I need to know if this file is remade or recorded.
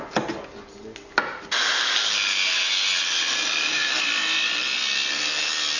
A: recorded